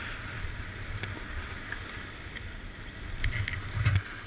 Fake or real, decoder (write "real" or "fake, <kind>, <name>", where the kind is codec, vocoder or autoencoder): real